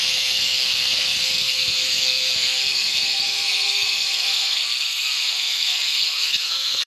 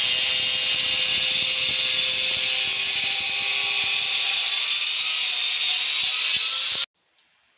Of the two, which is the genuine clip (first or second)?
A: second